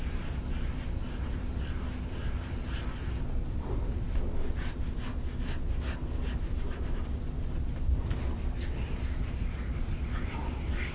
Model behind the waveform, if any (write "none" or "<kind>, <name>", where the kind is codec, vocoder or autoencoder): none